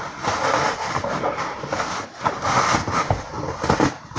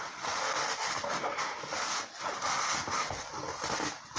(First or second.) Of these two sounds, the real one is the second